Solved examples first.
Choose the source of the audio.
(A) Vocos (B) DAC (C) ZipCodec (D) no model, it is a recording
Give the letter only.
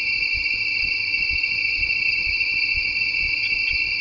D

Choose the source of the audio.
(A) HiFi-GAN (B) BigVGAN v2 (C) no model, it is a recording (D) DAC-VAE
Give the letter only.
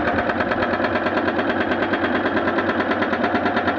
C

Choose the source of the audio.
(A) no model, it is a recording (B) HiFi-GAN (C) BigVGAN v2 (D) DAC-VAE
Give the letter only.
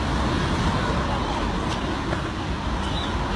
A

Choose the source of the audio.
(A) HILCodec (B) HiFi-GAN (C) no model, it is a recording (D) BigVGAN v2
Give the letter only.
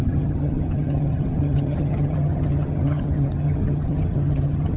B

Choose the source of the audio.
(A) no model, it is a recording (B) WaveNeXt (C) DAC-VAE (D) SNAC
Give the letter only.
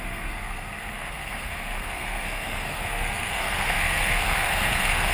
D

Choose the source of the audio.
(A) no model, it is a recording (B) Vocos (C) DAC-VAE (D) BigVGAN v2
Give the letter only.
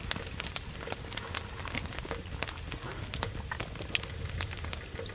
A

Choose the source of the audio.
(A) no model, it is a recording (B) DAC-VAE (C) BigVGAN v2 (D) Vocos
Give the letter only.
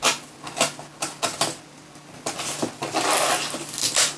A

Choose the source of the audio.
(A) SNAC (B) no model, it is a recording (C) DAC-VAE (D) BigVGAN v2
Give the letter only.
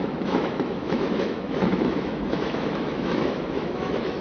C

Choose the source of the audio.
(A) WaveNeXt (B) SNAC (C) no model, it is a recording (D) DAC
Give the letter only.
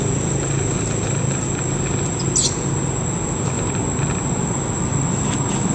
C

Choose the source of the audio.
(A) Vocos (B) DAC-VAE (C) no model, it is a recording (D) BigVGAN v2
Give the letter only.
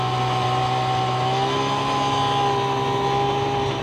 C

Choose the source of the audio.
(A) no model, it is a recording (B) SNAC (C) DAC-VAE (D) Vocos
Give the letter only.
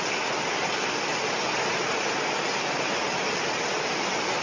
A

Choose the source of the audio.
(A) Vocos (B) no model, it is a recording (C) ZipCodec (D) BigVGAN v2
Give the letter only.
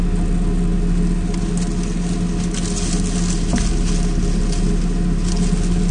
B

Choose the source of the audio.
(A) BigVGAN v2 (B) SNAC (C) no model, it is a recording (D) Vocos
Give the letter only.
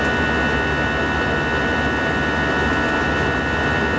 C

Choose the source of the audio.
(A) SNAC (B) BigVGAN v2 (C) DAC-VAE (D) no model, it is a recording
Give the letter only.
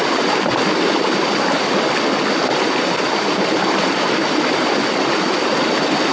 D